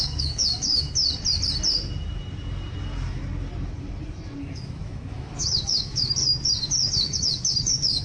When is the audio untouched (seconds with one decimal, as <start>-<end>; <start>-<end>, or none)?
1.0-4.4; 6.2-6.9